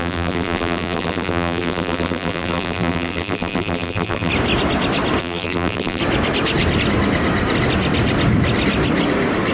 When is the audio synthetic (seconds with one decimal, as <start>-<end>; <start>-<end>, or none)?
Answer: 0.0-4.3; 5.2-6.0